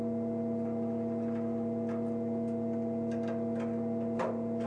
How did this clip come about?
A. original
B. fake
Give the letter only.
A